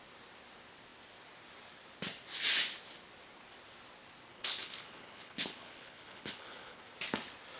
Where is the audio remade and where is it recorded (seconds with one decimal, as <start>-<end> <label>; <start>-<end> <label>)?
0.0-4.3 recorded; 4.3-6.8 remade; 6.8-7.6 recorded